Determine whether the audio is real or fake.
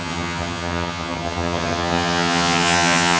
fake